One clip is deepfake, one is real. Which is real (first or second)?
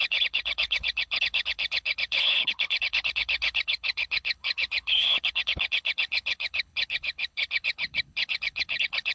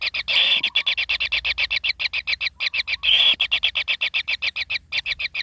second